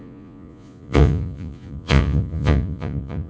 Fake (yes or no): yes